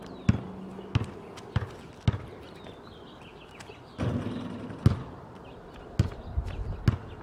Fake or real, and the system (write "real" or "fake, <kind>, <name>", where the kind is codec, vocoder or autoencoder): real